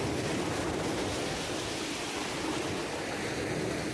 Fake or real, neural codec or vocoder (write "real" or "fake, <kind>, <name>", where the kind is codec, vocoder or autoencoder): real